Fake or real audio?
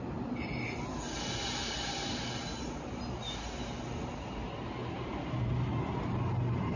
real